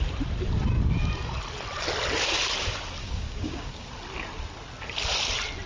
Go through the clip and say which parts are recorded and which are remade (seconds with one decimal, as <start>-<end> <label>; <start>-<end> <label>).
0.0-3.0 recorded; 3.0-3.9 remade; 3.9-5.7 recorded